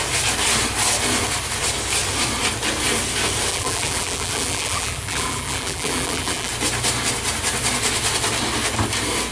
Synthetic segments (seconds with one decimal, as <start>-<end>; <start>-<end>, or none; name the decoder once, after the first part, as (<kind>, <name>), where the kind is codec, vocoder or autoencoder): 3.5-6.5 (vocoder, BigVGAN v2)

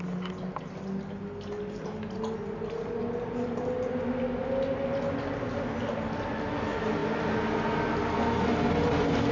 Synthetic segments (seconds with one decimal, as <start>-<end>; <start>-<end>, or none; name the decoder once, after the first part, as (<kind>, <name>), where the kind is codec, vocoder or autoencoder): none

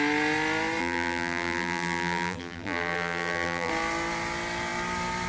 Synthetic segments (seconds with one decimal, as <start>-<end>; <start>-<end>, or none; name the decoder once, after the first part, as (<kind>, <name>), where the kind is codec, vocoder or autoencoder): 0.8-3.7 (vocoder, BigVGAN v2)

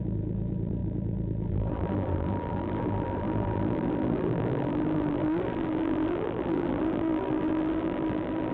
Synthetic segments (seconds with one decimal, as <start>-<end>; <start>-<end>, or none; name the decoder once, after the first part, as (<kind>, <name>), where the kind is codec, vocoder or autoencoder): 0.0-8.5 (vocoder, BigVGAN v2)

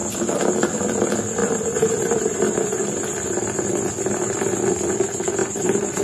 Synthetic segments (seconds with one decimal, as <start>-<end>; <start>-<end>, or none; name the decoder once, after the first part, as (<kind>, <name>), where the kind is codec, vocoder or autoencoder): 1.4-2.9 (vocoder, BigVGAN v2); 5.4-6.0

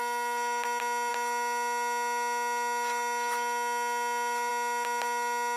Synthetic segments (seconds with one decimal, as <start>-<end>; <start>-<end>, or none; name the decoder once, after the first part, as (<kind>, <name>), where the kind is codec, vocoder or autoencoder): none

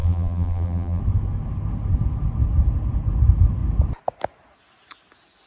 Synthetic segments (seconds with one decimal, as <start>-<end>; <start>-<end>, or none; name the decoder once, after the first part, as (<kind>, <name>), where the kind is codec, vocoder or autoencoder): 0.0-1.0 (vocoder, BigVGAN v2)